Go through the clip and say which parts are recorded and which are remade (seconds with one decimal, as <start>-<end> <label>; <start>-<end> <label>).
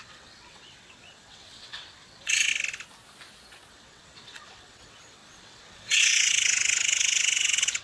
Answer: 0.0-2.5 remade; 2.5-3.7 recorded; 3.7-7.8 remade